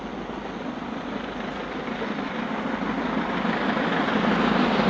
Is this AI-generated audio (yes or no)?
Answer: no